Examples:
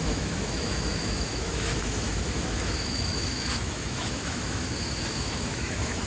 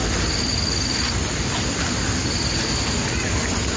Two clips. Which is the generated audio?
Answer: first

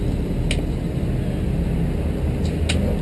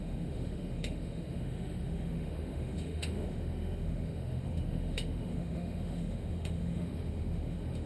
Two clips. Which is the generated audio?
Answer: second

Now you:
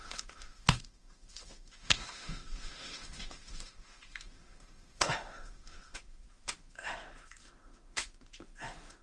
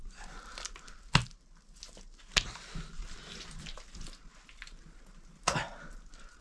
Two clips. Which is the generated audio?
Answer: first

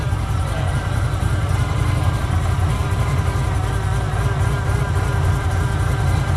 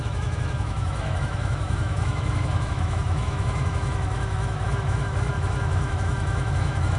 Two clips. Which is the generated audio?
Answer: second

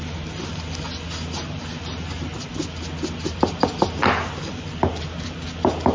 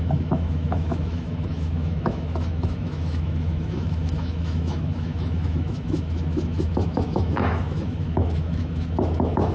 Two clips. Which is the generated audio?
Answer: second